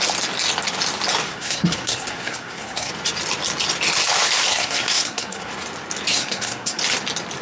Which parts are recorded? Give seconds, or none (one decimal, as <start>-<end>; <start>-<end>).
0.0-1.3; 2.9-4.5; 5.5-6.1; 6.8-7.4